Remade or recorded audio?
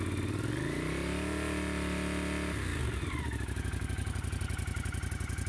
recorded